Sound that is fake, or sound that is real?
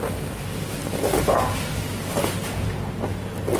real